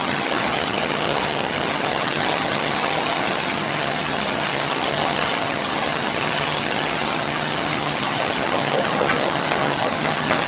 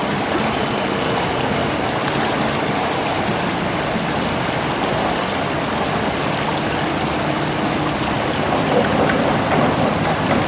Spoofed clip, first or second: first